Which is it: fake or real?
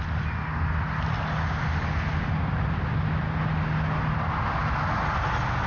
real